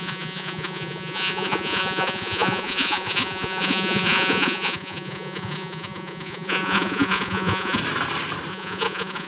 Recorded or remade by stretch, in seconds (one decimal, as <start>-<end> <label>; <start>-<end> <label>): 0.0-7.8 remade; 7.8-8.5 recorded; 8.5-9.3 remade